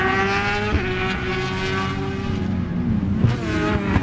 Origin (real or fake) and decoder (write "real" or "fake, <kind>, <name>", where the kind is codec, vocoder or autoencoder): real